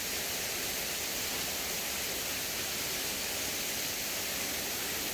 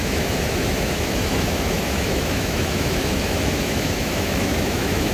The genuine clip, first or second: first